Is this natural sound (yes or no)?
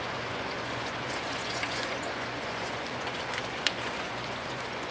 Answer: no